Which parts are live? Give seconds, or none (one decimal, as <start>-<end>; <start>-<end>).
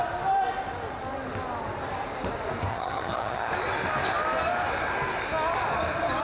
0.0-2.7; 3.5-6.2